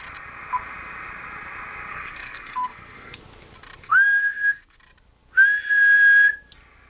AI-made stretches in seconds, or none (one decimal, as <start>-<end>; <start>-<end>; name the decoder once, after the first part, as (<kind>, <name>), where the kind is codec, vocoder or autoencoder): 1.9-3.2 (codec, SNAC); 3.8-4.8